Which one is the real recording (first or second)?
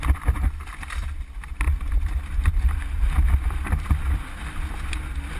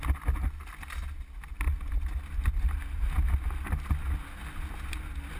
second